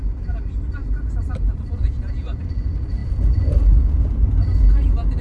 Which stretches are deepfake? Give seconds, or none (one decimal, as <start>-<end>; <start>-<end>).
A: 0.8-2.0